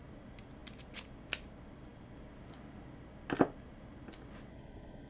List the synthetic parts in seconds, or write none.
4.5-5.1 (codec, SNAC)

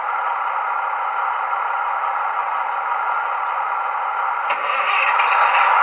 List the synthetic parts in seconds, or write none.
2.4-4.0 (vocoder, Vocos)

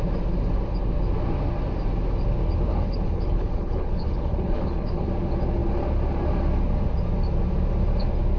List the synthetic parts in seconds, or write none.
2.7-5.1 (codec, HILCodec)

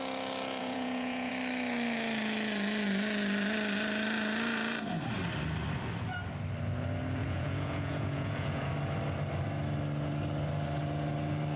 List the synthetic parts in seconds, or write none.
0.6-1.3 (vocoder, Vocos); 7.2-8.7